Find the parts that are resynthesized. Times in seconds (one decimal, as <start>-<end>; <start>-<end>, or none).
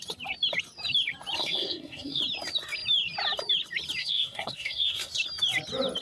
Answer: 1.4-2.2; 4.0-5.1